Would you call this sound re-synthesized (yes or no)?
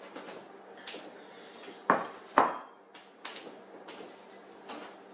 no